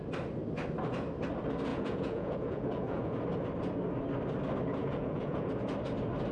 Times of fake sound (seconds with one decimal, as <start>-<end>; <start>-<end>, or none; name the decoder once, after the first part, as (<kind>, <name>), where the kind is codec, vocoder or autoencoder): 1.7-3.2 (vocoder, Vocos); 4.8-5.5